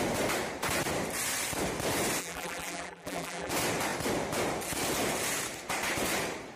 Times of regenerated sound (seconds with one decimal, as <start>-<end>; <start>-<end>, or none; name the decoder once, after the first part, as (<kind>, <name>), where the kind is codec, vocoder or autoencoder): 2.2-3.5 (vocoder, BigVGAN v2)